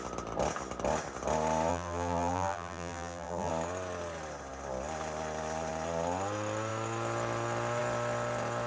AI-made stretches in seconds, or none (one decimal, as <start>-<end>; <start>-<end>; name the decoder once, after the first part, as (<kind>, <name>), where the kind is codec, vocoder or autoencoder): 1.7-3.5 (vocoder, BigVGAN v2)